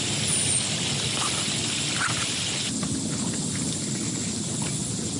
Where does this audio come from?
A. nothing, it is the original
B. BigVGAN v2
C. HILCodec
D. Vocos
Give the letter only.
A